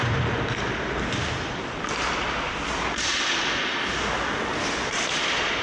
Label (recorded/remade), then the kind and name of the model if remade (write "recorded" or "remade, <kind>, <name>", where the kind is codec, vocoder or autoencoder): recorded